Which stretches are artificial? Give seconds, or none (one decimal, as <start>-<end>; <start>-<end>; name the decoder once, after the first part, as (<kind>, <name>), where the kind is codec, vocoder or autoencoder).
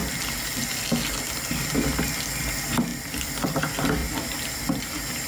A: 2.9-3.6 (vocoder, BigVGAN v2); 4.0-5.3